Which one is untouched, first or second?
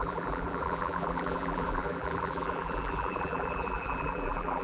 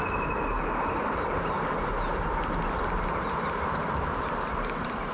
second